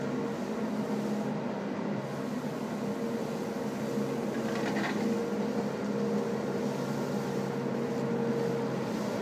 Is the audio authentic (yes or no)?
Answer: yes